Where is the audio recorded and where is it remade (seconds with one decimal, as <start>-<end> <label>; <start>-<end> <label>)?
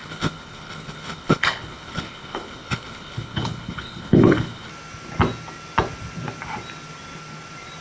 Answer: 0.0-4.7 remade; 4.7-7.8 recorded